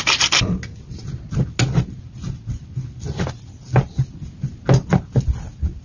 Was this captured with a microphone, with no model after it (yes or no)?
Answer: yes